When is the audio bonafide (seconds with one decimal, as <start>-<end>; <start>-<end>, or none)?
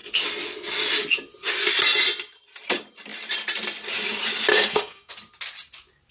0.0-4.5; 5.1-6.1